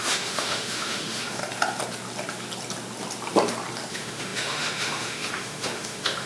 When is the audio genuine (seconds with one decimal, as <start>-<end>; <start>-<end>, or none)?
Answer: 1.4-3.9